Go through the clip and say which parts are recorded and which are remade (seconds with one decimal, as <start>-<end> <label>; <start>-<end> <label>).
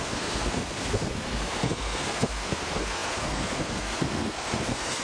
0.0-5.0 remade